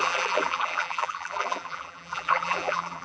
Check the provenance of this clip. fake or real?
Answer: fake